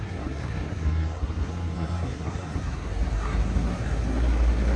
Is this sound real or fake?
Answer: fake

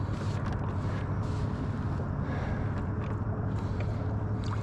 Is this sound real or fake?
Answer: real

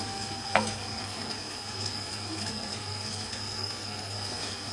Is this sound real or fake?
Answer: fake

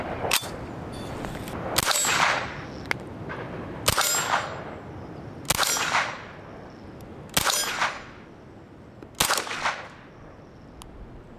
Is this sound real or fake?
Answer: real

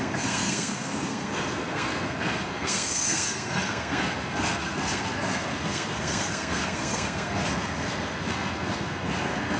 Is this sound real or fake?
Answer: fake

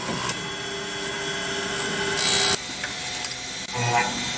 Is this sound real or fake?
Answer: real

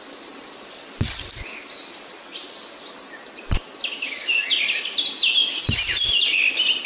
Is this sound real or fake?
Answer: real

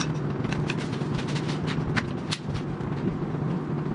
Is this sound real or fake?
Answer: real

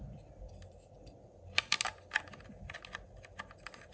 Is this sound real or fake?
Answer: real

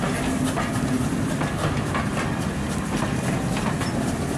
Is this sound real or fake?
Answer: real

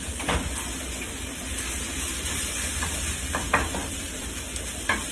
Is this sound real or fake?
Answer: real